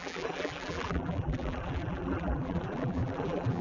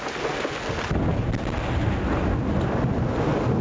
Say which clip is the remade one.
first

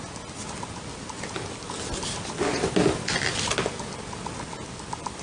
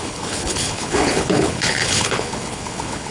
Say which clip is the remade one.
second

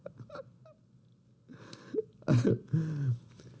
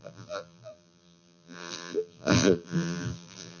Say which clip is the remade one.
second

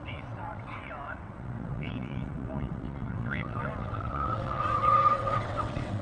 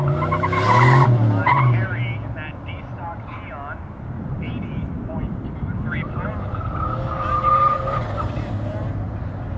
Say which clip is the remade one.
first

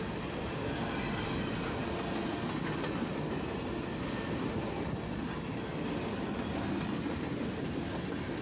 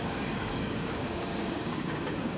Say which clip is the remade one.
second